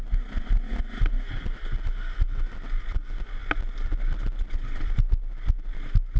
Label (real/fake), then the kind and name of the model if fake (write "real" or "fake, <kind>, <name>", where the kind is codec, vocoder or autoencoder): real